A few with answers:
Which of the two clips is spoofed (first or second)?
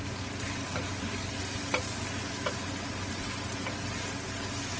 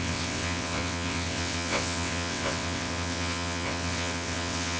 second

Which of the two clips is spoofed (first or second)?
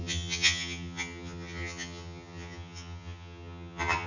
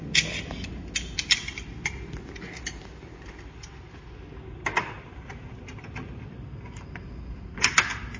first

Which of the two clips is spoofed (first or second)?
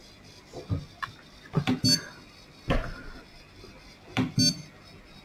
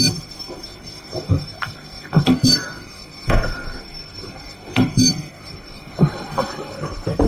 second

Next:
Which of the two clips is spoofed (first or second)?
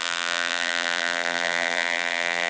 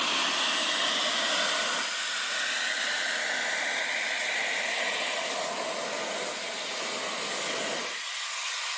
first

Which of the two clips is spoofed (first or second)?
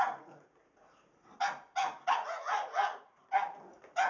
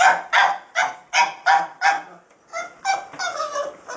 first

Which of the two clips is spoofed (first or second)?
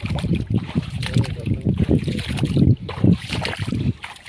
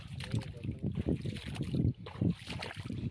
first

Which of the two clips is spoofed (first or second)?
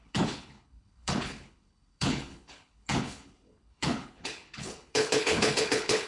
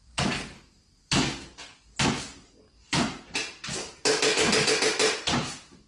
first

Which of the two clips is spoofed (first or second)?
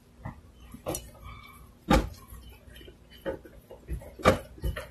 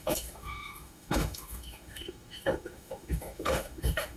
second